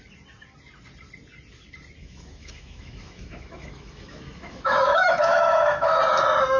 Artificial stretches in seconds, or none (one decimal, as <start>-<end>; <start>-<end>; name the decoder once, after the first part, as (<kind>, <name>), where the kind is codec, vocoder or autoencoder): 2.0-6.0 (autoencoder, DAC-VAE)